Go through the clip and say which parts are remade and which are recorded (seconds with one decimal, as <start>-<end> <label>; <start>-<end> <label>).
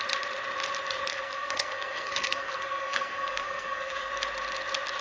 0.0-1.1 recorded; 1.1-4.1 remade; 4.1-5.0 recorded